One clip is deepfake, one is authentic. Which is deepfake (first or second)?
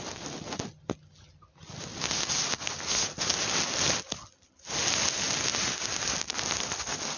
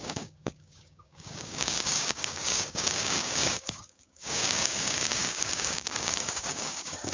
second